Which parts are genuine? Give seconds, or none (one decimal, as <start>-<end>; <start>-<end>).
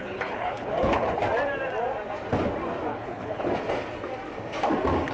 1.2-2.9; 3.5-5.1